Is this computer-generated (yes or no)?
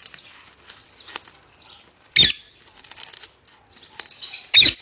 no